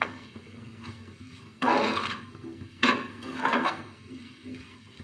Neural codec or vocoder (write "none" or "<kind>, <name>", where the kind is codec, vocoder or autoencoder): codec, SNAC